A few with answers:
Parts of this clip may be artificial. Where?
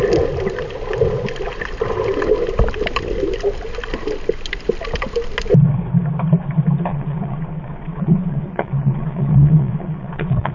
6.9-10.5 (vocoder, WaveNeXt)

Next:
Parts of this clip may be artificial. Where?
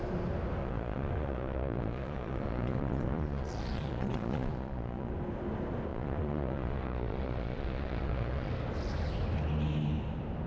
0.6-5.1 (vocoder, Vocos); 5.9-8.5